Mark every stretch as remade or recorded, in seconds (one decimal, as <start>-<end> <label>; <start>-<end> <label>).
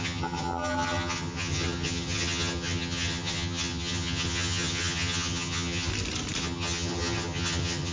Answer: 0.0-5.9 remade; 5.9-6.4 recorded; 6.4-7.9 remade